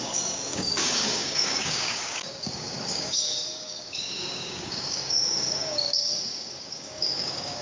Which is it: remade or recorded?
remade